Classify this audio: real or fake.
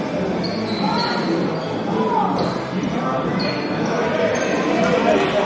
real